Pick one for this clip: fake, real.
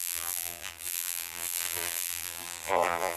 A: fake